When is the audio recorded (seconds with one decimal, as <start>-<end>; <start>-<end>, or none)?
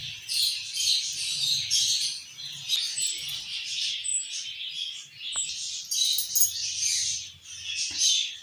0.0-8.4